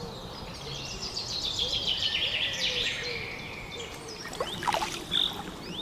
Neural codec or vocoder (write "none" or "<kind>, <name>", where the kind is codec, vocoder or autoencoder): none